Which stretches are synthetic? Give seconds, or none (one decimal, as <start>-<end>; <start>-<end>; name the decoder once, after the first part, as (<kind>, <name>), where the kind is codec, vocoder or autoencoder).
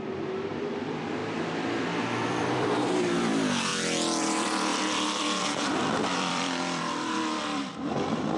0.0-3.7 (vocoder, BigVGAN v2); 4.2-8.4